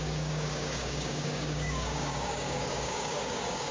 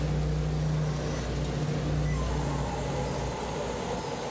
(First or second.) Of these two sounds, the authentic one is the second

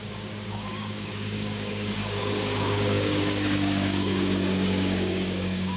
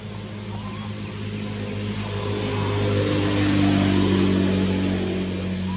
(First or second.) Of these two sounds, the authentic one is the second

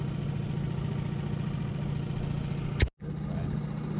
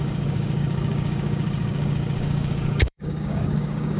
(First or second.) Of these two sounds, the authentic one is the first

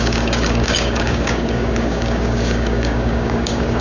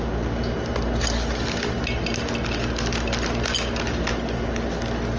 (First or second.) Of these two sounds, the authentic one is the second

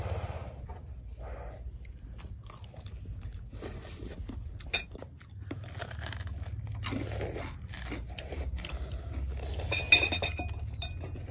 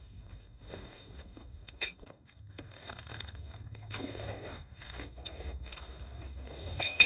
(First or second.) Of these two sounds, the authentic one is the first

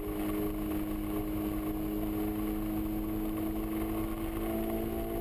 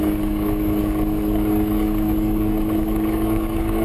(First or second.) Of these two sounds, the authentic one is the first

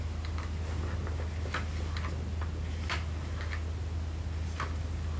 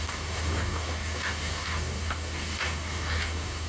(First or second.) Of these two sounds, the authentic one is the first